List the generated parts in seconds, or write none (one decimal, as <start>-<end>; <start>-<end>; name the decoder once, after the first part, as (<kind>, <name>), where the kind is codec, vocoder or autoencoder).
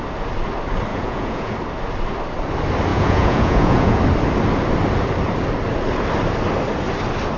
0.9-1.5 (vocoder, Vocos); 2.9-4.0